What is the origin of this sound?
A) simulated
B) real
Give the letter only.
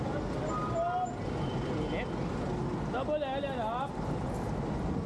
B